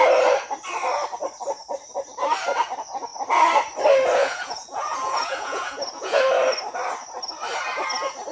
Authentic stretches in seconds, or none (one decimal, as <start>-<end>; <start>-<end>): 0.0-4.2; 6.2-8.3